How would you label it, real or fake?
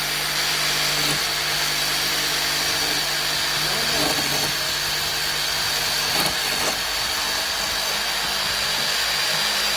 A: real